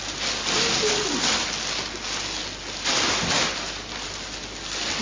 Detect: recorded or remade recorded